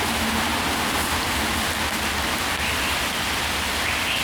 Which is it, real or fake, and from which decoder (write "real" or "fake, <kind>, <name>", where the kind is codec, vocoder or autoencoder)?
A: real